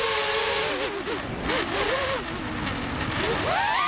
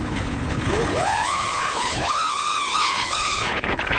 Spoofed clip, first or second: second